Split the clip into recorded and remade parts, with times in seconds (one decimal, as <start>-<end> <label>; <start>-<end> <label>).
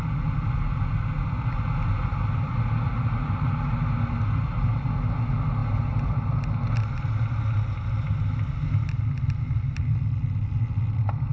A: 0.0-11.3 recorded